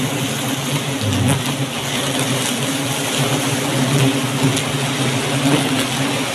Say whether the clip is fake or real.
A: real